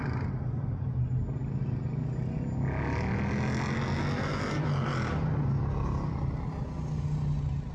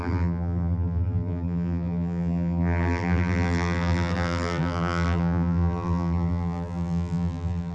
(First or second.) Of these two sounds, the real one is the first